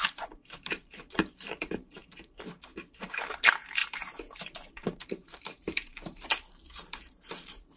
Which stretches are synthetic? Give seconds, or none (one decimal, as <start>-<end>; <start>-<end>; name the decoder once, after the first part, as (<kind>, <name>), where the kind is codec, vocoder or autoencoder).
0.0-7.8 (vocoder, BigVGAN v2)